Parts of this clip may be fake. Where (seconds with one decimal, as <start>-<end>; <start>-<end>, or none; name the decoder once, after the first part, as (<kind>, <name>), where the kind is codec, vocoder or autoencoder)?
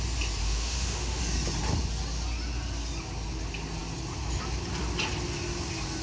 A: 0.4-1.2 (autoencoder, DAC-VAE)